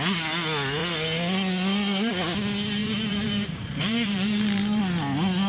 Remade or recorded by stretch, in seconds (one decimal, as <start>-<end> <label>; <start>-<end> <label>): 0.0-2.8 recorded; 2.8-4.8 remade; 4.8-5.5 recorded